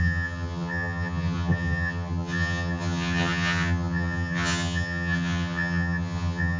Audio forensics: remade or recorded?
remade